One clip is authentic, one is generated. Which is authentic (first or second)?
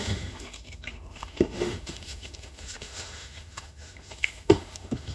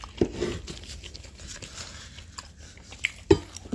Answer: second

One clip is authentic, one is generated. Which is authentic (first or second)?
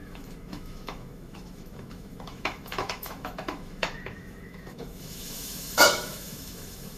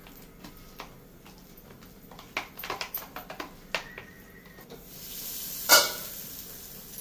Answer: second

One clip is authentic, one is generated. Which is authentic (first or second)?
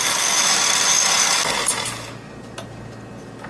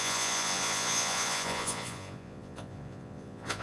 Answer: first